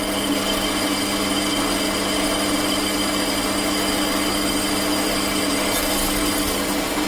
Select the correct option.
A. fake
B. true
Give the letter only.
B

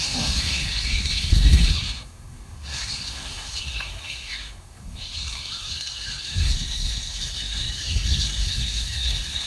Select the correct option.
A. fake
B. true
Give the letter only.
A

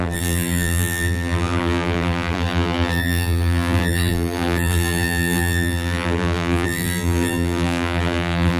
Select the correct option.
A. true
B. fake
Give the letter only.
B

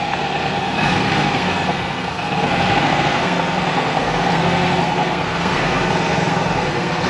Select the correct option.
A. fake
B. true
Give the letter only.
A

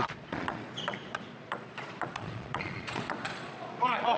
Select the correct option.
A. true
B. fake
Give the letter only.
B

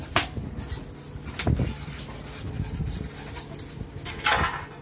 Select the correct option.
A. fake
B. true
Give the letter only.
B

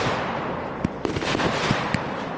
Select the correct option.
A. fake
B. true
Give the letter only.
A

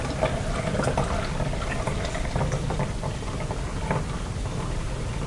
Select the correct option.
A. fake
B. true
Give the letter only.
A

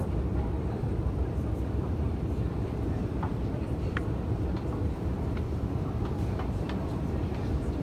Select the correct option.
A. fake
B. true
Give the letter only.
A